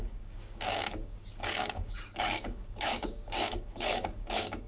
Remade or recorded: remade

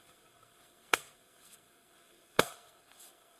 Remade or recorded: remade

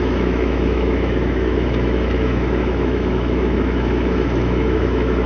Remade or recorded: remade